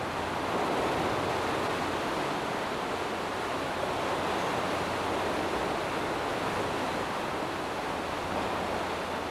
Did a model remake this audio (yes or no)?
no